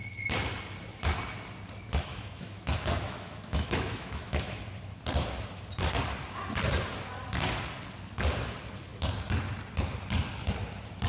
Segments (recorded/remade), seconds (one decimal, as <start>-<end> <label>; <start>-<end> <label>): 0.0-2.1 recorded; 2.1-4.6 remade; 4.6-11.1 recorded